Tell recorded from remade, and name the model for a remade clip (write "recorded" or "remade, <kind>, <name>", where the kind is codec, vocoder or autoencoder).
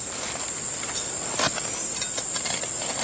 recorded